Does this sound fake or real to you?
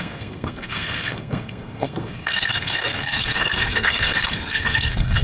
fake